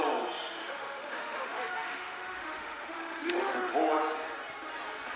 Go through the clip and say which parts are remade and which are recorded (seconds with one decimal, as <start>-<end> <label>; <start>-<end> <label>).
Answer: 0.0-0.6 recorded; 0.6-3.7 remade; 3.7-5.2 recorded